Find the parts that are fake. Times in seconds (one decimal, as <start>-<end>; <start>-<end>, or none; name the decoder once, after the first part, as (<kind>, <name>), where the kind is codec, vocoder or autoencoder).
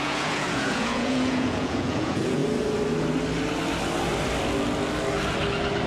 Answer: 0.0-2.4 (vocoder, Vocos)